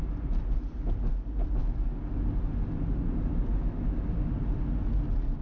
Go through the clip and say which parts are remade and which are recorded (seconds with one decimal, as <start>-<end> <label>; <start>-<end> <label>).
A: 0.0-5.4 recorded